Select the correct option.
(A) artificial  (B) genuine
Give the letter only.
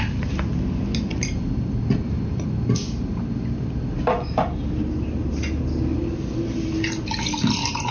B